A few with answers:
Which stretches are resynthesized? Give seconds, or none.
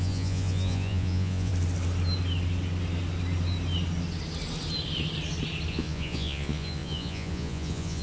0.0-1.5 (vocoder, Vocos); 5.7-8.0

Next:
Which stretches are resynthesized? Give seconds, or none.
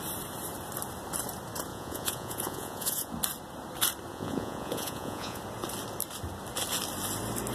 1.7-3.1 (vocoder, Vocos); 4.1-5.4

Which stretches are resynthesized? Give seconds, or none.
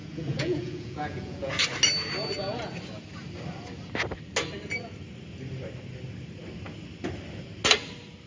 0.0-1.6 (vocoder, Vocos)